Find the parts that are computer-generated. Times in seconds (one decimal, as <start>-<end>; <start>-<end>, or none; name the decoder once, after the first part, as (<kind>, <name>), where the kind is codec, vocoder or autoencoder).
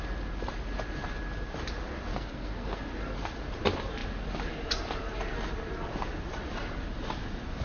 2.1-2.8 (codec, SNAC)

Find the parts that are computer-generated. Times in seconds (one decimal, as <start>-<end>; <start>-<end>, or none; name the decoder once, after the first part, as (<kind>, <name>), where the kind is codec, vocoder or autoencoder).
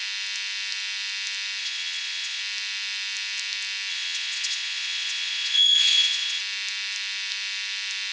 1.6-2.4 (vocoder, Vocos); 3.9-6.4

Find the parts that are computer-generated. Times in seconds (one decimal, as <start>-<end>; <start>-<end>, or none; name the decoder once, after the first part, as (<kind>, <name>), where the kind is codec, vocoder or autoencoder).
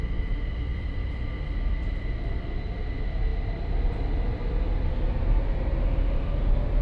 none